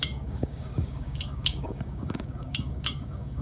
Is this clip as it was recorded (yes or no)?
no